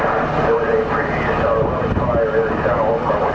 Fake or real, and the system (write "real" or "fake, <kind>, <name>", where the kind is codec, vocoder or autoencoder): real